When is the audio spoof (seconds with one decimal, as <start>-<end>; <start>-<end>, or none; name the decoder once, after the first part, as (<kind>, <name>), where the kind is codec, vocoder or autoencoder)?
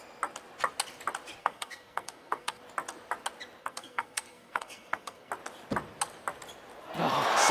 1.4-2.6 (codec, SNAC); 3.6-5.3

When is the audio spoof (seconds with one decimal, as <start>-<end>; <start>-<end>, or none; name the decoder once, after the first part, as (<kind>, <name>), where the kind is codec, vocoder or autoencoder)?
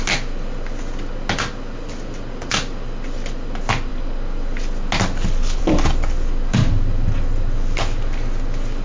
none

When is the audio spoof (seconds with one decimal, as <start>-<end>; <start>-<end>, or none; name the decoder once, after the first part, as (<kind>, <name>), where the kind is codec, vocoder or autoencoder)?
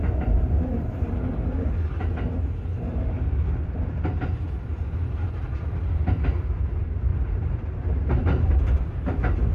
0.0-1.3 (vocoder, BigVGAN v2); 7.1-8.8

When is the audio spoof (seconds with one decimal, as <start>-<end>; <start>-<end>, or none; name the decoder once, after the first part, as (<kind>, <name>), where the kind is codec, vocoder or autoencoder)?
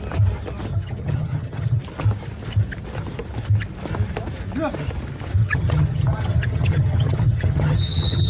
0.7-1.8 (vocoder, HiFi-GAN); 5.4-8.3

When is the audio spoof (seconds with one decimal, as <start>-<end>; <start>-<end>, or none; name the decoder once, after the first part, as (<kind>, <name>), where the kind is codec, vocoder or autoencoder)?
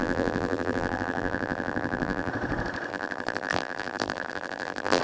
0.0-2.3 (vocoder, BigVGAN v2); 2.9-5.0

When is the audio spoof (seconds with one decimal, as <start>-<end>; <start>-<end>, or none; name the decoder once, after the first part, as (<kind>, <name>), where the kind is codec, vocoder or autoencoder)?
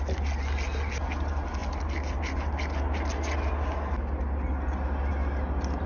none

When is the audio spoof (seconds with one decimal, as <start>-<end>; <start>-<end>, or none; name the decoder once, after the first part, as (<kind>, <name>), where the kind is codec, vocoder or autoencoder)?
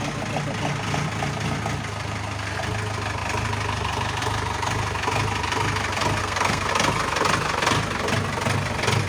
6.2-6.7 (codec, SNAC)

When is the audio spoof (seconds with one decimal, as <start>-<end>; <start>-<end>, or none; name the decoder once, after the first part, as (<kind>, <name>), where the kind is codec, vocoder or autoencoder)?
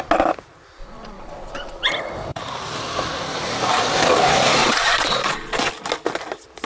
0.8-1.9 (vocoder, Vocos); 4.6-5.7